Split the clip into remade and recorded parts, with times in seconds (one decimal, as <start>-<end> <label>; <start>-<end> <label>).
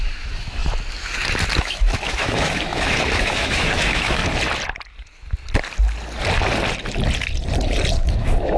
0.0-0.6 remade; 0.6-1.6 recorded; 1.6-4.2 remade; 4.2-8.0 recorded; 8.0-8.6 remade